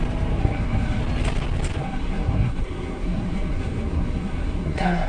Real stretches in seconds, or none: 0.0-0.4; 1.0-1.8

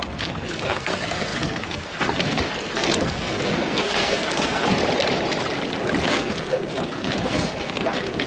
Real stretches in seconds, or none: 4.8-6.1

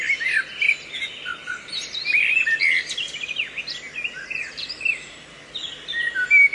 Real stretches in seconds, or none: 0.0-6.5

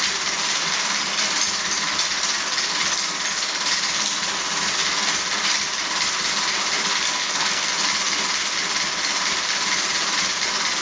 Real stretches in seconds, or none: 0.0-7.2; 7.7-10.8

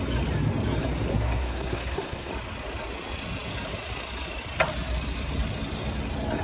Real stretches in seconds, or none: 0.0-1.1; 2.3-6.4

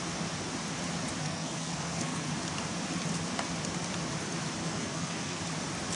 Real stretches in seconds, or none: 0.0-1.2; 2.3-4.6; 5.4-5.9

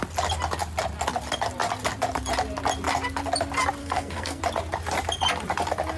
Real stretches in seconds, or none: 0.0-3.8; 4.4-6.0